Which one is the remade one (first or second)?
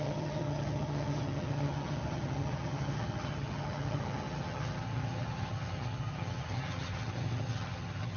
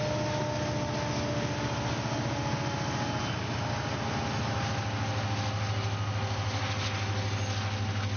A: first